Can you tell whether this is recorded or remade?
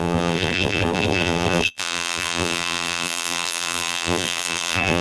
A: remade